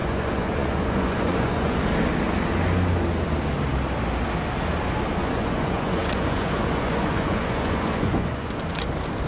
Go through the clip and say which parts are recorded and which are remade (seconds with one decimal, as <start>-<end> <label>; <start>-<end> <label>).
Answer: 0.0-1.8 remade; 1.8-5.2 recorded; 5.2-8.6 remade; 8.6-9.3 recorded